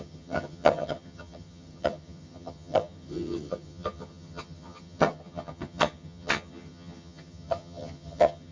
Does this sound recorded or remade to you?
remade